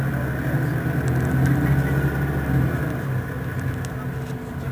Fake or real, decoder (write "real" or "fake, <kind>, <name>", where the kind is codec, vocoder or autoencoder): real